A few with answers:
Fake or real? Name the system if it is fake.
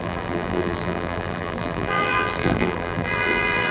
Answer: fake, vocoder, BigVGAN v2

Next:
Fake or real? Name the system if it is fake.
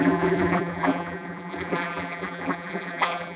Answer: fake, vocoder, BigVGAN v2